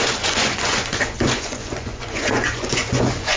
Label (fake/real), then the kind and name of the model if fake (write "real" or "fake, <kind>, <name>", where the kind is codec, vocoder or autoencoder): fake, vocoder, Vocos